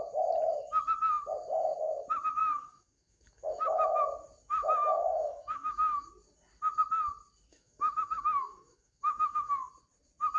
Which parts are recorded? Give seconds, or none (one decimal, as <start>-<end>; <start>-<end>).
0.0-2.4; 4.0-4.6; 6.1-7.5; 9.7-10.4